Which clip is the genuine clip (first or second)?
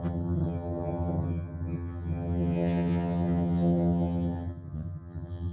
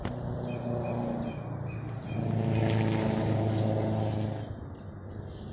second